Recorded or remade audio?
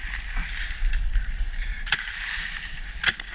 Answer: recorded